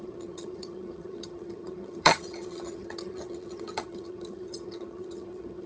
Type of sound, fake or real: fake